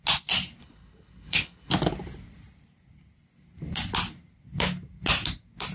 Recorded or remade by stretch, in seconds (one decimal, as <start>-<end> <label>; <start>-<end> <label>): 0.0-0.6 recorded; 0.6-1.7 remade; 1.7-5.7 recorded